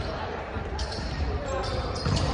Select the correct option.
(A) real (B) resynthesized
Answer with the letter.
B